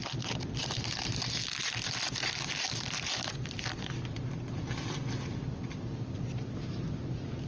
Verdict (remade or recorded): recorded